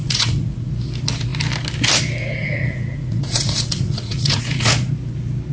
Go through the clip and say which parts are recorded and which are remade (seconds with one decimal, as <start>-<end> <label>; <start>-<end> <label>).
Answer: 0.0-0.7 remade; 0.7-2.4 recorded; 2.4-4.9 remade; 4.9-5.5 recorded